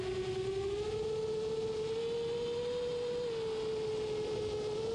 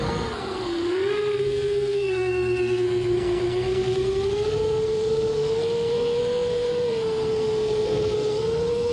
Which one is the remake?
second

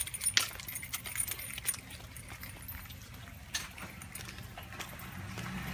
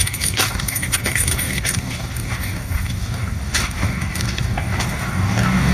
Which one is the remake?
second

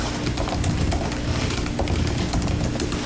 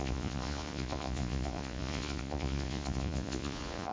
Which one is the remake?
second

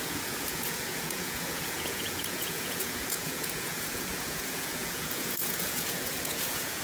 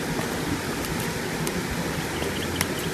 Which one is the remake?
first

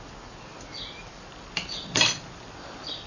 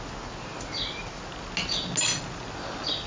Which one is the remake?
first